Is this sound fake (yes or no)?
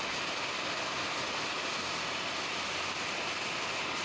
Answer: no